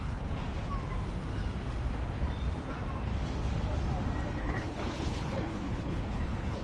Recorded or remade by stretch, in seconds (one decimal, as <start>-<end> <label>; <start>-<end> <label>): 0.0-0.4 remade; 0.4-4.4 recorded; 4.4-6.6 remade